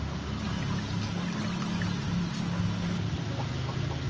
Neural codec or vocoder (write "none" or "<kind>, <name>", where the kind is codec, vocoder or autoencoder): none